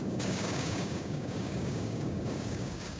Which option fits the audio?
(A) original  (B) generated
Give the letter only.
B